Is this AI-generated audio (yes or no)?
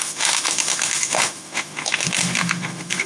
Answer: yes